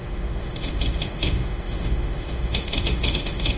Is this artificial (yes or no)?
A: yes